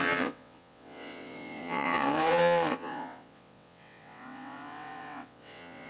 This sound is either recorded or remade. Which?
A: remade